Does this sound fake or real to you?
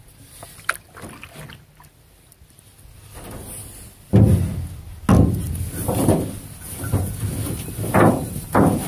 real